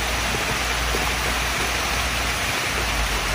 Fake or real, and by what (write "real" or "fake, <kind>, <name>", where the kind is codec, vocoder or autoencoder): real